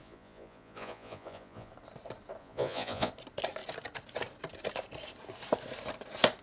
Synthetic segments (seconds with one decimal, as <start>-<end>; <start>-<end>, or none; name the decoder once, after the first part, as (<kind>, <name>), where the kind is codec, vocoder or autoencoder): 0.0-1.7 (vocoder, Vocos); 2.4-3.1